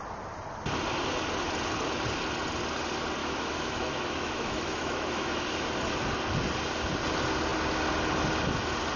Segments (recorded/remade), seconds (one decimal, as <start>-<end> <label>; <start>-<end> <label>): 0.0-3.2 recorded; 3.2-5.4 remade; 5.4-9.0 recorded